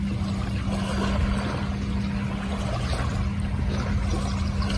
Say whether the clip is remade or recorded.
recorded